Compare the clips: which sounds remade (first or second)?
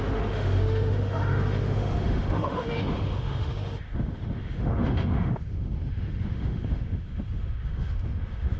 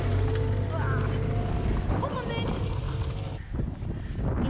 first